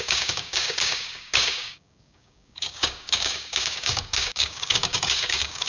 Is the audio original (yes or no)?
no